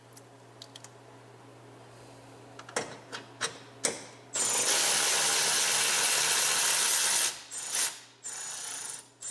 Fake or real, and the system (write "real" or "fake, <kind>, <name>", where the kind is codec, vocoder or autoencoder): real